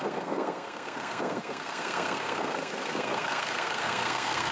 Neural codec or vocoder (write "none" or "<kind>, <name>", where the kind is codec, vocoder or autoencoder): codec, SNAC